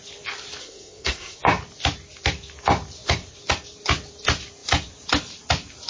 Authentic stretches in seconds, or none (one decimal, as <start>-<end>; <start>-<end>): 0.0-0.6; 1.4-5.9